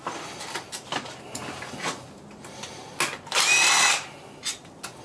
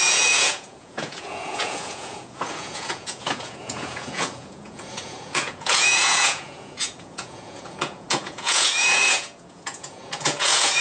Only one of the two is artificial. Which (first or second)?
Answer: second